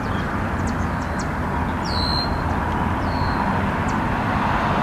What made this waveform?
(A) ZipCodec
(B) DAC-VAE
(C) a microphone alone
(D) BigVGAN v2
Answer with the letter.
C